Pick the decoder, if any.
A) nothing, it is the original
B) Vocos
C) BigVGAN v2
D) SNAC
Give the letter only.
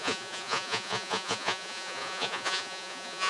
B